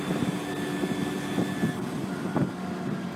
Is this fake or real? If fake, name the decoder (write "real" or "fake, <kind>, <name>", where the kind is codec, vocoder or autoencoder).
real